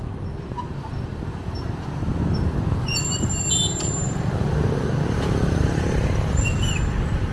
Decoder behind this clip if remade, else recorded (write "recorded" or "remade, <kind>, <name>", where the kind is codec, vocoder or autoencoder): remade, vocoder, BigVGAN v2